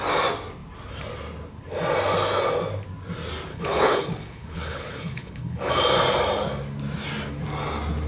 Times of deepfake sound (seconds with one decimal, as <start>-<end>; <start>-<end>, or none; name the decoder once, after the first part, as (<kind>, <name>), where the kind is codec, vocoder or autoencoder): 3.5-5.7 (codec, HILCodec)